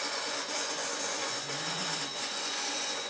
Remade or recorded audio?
remade